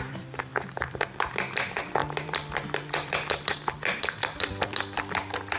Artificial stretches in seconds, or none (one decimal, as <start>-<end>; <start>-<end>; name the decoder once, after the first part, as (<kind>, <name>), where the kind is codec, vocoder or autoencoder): 0.0-5.6 (vocoder, BigVGAN v2)